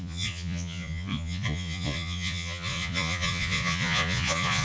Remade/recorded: remade